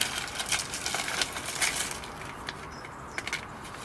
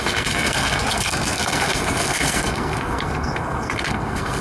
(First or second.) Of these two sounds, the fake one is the second